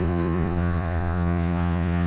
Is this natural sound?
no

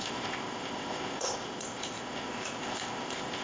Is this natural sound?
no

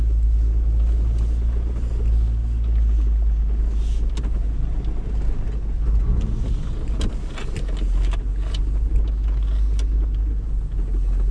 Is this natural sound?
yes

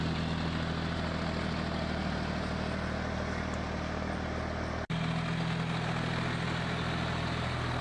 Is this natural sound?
yes